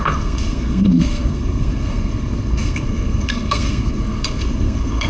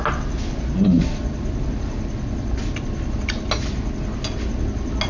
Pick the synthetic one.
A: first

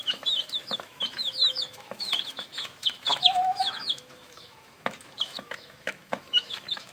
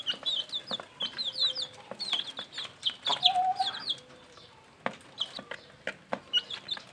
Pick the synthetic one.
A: first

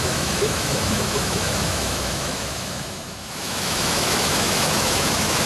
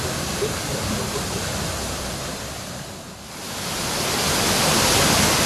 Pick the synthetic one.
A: first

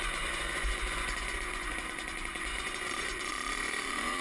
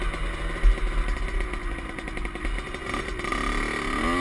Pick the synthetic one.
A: first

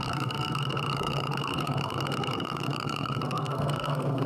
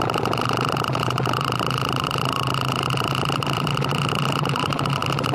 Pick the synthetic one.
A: first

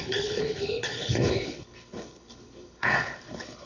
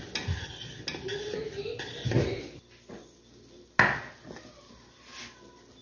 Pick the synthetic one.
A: first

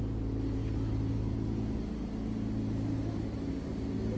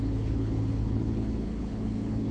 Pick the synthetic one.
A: second